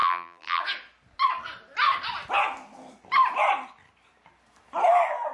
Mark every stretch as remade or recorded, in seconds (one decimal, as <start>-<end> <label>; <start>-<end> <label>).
0.0-0.6 remade; 0.6-5.3 recorded